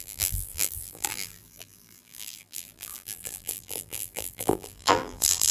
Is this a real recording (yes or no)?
no